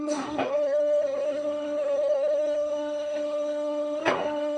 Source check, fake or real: fake